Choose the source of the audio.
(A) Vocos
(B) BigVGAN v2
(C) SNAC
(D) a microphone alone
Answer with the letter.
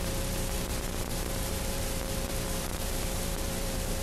B